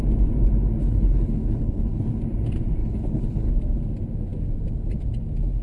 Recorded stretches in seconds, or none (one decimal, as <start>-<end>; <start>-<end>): 0.0-0.8; 2.2-2.8; 3.5-5.6